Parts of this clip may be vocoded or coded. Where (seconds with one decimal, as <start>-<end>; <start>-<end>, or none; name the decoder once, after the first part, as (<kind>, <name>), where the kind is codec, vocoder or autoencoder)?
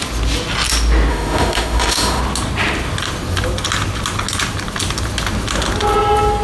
1.1-2.2 (autoencoder, DAC-VAE)